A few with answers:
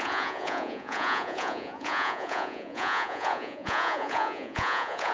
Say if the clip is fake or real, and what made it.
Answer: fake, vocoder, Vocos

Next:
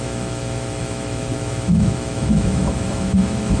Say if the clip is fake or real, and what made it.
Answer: fake, autoencoder, DAC-VAE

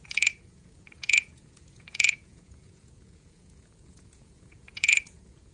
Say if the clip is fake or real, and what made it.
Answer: fake, vocoder, Vocos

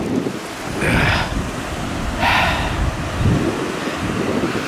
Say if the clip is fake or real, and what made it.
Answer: real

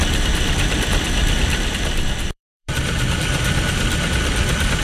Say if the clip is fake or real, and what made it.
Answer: fake, vocoder, BigVGAN v2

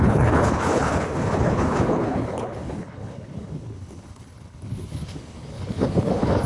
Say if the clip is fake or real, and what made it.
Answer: fake, codec, HILCodec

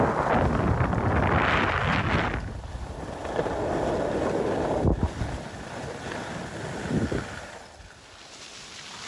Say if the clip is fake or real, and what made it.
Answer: real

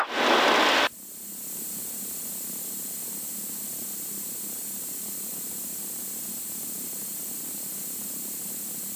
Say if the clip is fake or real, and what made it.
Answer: real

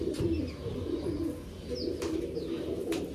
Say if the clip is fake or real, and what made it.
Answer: real